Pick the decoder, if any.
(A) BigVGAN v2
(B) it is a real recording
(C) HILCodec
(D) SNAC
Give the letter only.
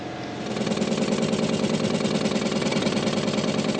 B